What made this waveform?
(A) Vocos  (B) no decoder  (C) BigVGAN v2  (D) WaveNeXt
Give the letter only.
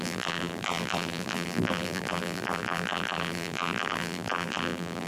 C